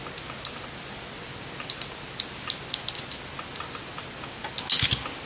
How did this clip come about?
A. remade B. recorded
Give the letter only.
B